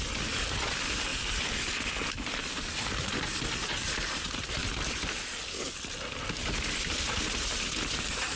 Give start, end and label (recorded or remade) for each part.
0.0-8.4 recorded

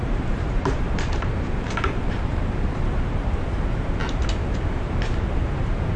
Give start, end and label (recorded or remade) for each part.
0.0-4.0 remade; 4.0-4.7 recorded; 4.7-6.0 remade